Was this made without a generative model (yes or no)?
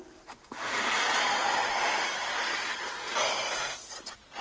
yes